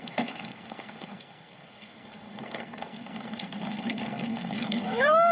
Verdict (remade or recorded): remade